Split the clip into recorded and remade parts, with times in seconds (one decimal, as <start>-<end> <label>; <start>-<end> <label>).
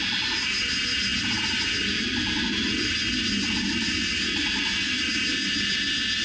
0.0-6.2 recorded